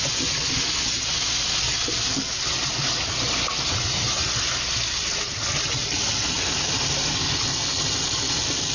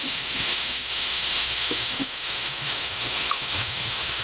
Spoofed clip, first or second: second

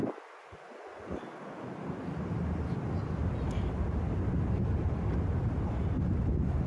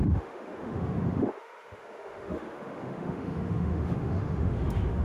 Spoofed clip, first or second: second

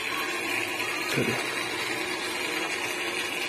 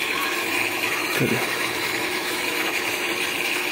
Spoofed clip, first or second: second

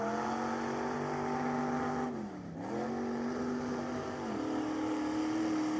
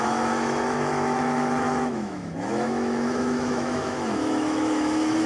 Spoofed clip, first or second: second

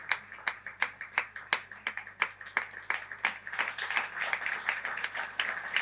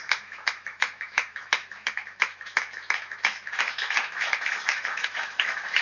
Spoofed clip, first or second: second